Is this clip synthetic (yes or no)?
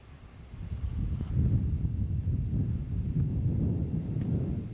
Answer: no